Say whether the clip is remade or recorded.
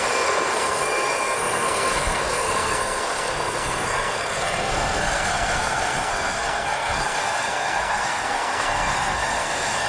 remade